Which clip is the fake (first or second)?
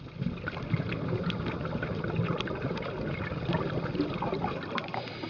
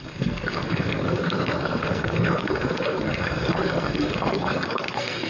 second